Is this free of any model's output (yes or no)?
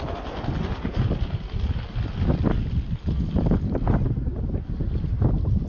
yes